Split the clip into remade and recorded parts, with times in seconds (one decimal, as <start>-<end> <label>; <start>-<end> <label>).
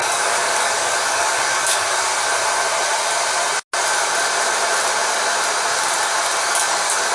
0.0-2.1 remade; 2.1-6.4 recorded; 6.4-7.1 remade